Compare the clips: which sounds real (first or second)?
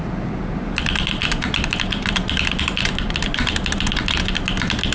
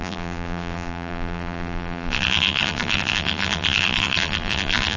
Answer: first